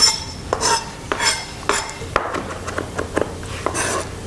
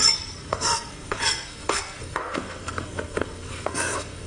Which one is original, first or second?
first